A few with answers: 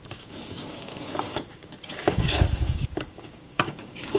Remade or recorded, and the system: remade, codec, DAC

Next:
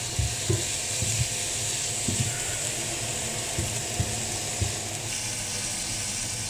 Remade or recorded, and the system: recorded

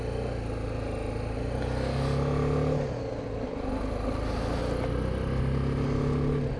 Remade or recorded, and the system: recorded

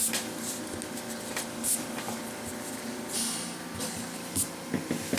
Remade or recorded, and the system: recorded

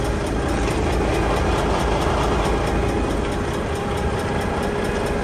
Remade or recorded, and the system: recorded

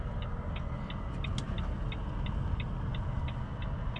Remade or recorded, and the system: recorded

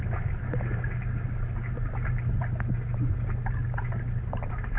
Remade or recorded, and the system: recorded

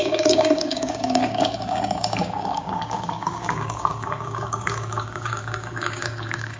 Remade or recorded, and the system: remade, codec, DAC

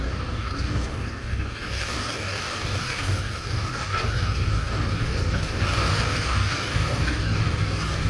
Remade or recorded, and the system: remade, codec, DAC